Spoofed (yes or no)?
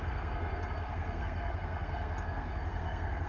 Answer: yes